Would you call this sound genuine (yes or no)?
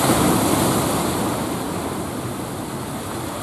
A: yes